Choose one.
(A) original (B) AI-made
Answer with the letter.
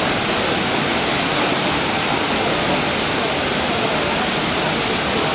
A